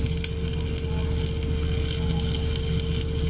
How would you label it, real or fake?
real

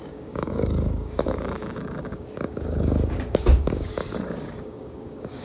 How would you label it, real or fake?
fake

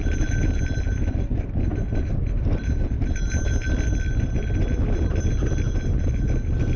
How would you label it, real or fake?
real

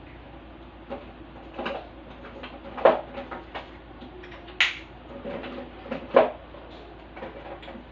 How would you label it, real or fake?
real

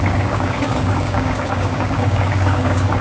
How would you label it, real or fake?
fake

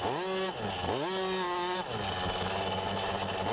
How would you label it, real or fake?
real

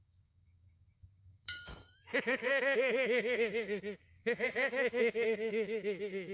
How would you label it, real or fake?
fake